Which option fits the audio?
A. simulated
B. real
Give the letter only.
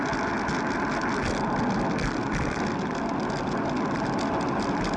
B